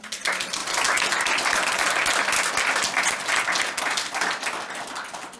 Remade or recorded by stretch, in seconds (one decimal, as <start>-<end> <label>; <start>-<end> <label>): 0.0-5.4 recorded